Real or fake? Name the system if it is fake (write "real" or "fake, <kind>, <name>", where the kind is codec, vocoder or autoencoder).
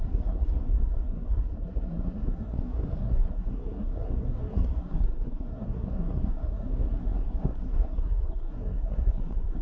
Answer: fake, codec, SNAC